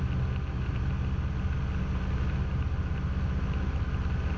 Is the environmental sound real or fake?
real